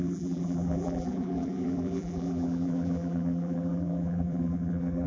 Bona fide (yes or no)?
no